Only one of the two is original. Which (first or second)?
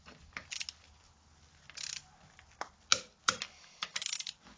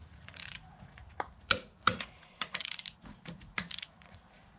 first